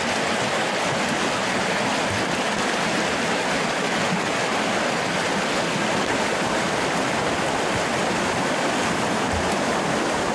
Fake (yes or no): no